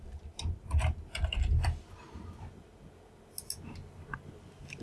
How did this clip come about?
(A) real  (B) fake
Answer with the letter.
A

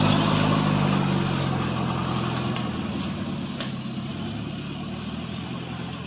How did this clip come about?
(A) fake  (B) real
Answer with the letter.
B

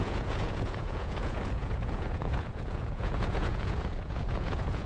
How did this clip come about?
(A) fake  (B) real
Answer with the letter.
A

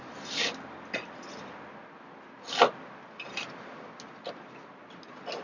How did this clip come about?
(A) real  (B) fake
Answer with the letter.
A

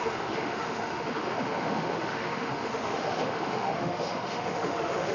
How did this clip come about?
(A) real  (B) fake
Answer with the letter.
B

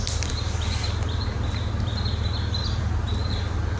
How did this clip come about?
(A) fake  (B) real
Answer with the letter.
A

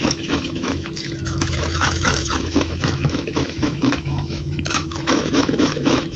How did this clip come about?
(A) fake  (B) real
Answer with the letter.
A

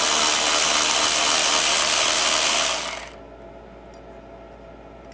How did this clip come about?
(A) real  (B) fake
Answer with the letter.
A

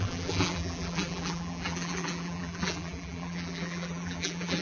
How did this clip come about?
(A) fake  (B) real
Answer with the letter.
A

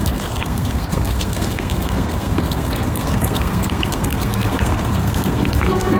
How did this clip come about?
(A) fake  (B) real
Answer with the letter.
A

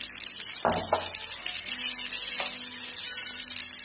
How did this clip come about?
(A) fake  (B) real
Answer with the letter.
B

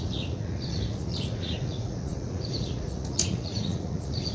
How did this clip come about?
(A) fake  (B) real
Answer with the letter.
A